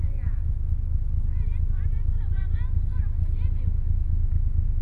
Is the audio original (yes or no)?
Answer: yes